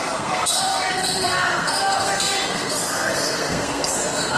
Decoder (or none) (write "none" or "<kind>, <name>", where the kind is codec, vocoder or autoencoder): codec, SNAC